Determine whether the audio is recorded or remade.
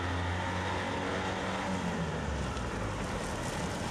recorded